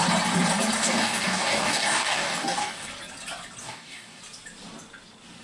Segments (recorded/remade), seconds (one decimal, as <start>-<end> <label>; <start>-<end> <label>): 0.0-0.8 recorded; 0.8-2.9 remade; 2.9-3.6 recorded; 3.6-4.2 remade; 4.2-5.4 recorded